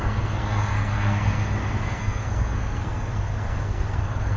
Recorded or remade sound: remade